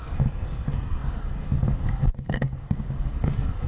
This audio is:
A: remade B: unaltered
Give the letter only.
A